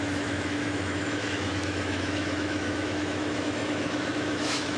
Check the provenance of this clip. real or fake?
fake